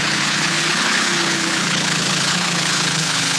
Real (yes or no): no